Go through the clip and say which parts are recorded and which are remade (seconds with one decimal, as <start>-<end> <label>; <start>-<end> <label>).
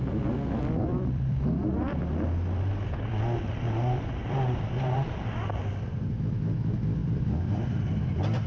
0.0-0.9 recorded; 0.9-2.1 remade; 2.1-4.2 recorded; 4.2-5.2 remade; 5.2-7.0 recorded; 7.0-7.9 remade; 7.9-8.5 recorded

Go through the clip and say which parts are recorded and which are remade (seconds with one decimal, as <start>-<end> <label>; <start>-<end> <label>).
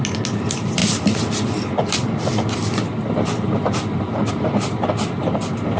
0.0-5.8 recorded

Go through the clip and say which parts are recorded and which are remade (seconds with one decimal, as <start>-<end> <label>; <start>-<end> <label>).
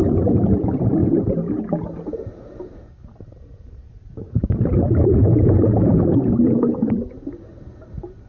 0.0-8.3 remade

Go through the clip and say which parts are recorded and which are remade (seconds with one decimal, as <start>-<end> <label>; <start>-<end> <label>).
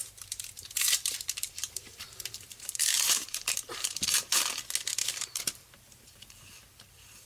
0.0-4.2 remade; 4.2-5.0 recorded; 5.0-7.3 remade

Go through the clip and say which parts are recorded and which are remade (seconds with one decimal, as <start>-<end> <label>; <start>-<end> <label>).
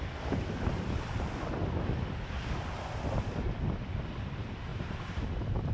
0.0-4.7 recorded; 4.7-5.7 remade